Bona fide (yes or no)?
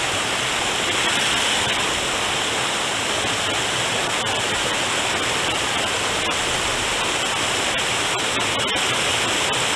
yes